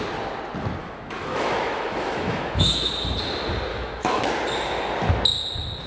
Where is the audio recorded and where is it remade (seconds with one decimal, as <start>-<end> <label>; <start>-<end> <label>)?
0.0-0.8 recorded; 0.8-2.9 remade; 2.9-3.7 recorded; 3.7-4.2 remade; 4.2-5.9 recorded